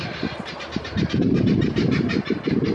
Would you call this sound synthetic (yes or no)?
yes